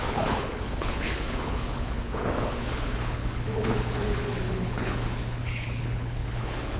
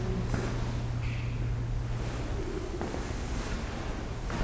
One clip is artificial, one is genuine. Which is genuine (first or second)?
second